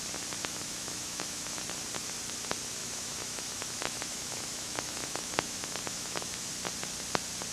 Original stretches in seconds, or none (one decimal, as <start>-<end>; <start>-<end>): 0.0-0.4; 1.6-2.8; 6.5-7.5